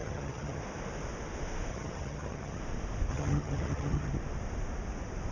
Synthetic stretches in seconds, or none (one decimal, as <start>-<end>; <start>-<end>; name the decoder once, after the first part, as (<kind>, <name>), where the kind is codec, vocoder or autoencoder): 0.0-0.6 (vocoder, HiFi-GAN); 1.7-2.6; 3.1-4.1